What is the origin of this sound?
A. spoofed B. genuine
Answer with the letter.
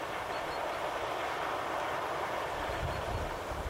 B